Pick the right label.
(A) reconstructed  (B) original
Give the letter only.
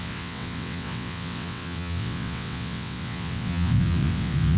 A